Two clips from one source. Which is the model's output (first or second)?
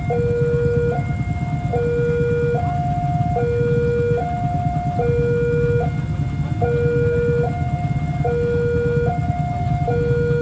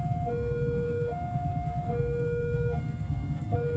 second